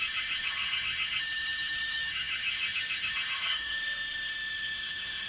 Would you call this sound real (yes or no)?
no